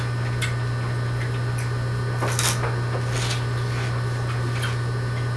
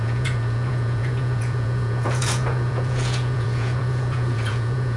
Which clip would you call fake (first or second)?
second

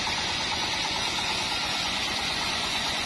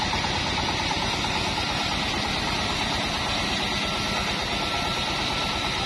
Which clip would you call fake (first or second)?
first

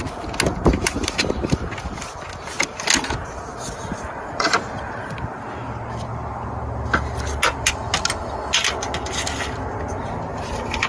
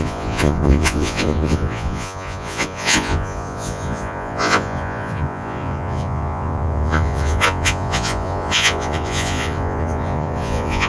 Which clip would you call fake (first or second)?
second